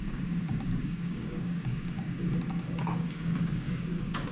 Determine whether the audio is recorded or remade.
remade